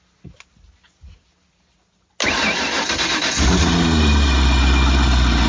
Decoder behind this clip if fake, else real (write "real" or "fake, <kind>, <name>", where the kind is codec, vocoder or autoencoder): real